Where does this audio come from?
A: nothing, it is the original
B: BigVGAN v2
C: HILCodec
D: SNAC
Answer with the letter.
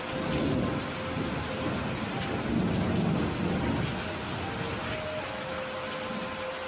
A